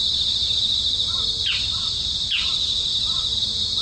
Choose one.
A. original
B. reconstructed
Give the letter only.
A